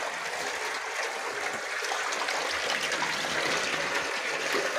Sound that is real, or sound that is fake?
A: real